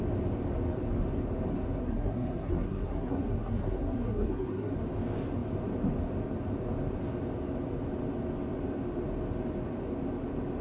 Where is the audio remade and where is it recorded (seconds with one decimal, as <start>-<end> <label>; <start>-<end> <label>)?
0.0-1.8 recorded; 1.8-4.7 remade; 4.7-10.6 recorded